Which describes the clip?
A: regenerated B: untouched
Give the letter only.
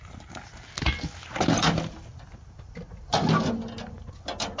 B